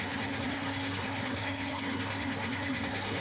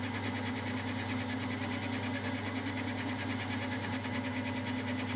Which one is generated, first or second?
first